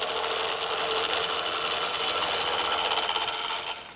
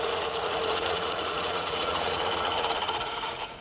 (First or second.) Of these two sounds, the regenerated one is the second